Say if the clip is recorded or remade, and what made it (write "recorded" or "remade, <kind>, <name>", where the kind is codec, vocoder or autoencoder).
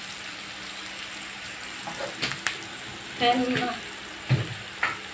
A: recorded